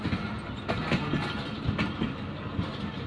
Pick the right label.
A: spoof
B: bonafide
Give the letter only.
B